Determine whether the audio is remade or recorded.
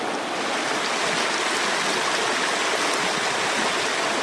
recorded